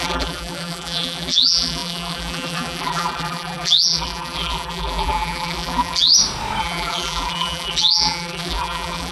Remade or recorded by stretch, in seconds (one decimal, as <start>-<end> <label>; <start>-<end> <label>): 0.0-6.1 remade; 6.1-6.6 recorded; 6.6-9.1 remade